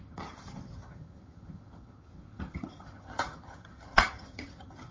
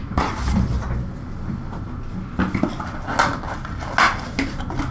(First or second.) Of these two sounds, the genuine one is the second